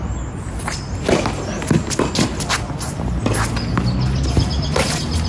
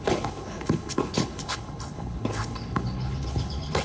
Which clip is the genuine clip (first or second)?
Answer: first